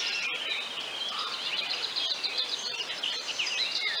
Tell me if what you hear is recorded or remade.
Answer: recorded